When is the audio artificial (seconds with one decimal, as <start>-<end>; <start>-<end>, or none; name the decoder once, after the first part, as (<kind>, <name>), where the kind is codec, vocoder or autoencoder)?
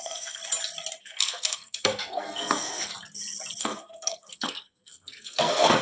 0.0-0.4 (codec, SNAC); 1.0-2.9; 3.6-5.8